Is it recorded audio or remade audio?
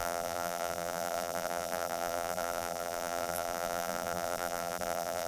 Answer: remade